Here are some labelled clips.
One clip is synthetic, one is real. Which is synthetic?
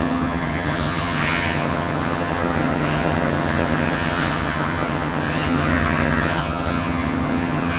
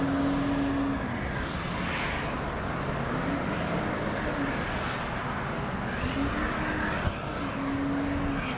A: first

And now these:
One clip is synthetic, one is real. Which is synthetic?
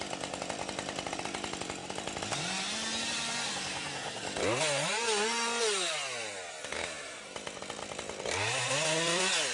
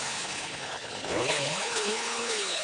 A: second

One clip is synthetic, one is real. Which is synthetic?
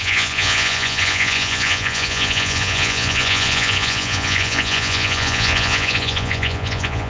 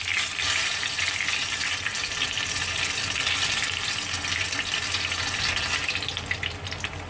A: first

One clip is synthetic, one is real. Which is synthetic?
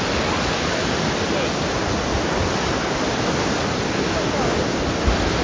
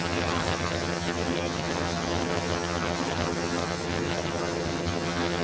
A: second